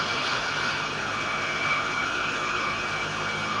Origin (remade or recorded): remade